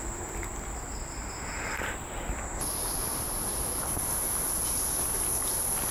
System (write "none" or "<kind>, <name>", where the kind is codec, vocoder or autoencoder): none